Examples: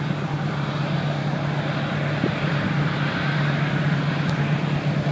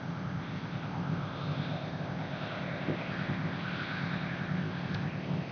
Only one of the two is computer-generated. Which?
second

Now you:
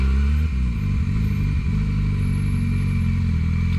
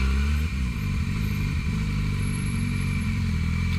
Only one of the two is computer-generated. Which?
second